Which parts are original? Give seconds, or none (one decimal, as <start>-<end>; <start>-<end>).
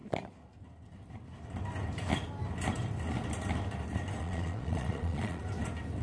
0.0-4.2; 5.4-6.0